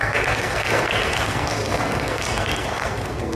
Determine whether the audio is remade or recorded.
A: remade